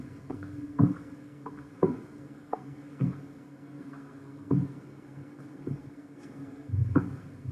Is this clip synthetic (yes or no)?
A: yes